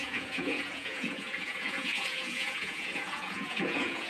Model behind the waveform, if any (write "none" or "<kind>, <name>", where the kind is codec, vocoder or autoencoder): vocoder, Vocos